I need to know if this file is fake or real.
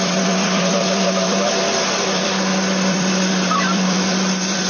fake